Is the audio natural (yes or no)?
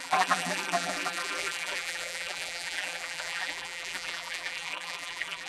no